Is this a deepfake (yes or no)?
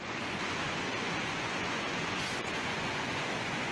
yes